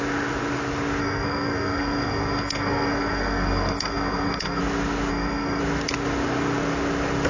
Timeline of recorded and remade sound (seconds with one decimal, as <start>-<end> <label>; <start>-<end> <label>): 0.0-1.0 recorded; 1.0-4.6 remade; 4.6-5.1 recorded; 5.1-5.6 remade; 5.6-7.3 recorded